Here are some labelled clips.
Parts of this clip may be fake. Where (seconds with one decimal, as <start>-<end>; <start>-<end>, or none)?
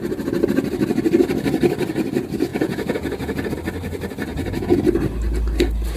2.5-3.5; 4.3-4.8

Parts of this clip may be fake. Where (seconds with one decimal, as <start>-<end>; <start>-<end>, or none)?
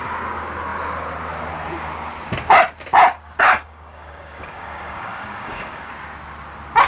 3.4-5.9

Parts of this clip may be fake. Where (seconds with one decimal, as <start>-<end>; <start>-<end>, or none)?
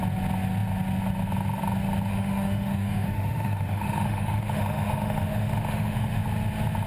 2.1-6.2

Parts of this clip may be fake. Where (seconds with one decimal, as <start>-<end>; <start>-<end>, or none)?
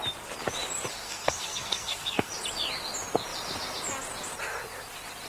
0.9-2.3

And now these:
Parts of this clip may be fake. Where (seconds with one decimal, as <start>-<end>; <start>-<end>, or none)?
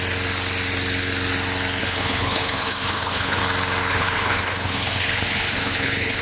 1.8-3.4; 3.9-6.2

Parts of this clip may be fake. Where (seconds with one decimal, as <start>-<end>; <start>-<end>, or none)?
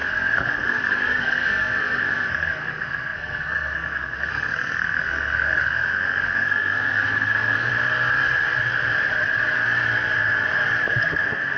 0.0-7.7; 10.9-11.6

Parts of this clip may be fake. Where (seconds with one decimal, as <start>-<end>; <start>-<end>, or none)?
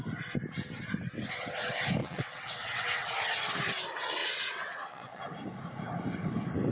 2.0-3.1; 4.2-5.2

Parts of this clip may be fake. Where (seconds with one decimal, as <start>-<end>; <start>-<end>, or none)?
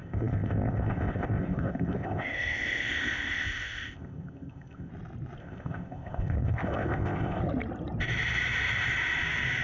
0.0-4.9; 5.4-7.4